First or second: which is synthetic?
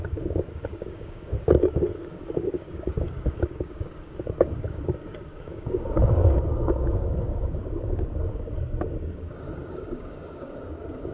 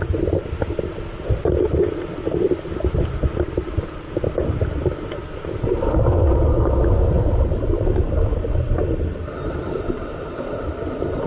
first